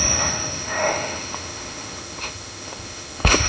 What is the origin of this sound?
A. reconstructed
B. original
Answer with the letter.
A